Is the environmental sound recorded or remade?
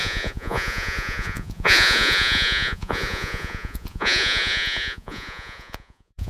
remade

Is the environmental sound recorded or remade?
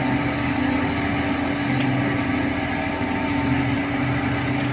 recorded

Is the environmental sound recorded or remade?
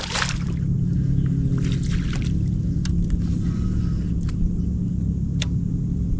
recorded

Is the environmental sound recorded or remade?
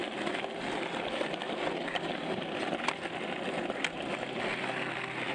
recorded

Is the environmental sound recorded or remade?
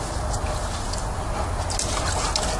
recorded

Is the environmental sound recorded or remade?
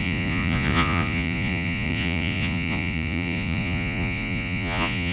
remade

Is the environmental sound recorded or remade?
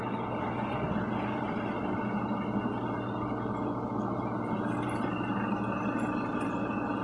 recorded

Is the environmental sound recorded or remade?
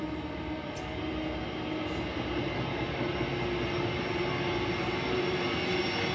recorded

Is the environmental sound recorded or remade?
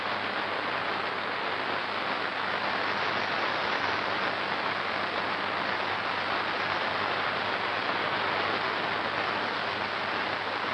recorded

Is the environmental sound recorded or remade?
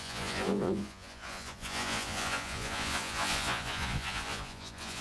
remade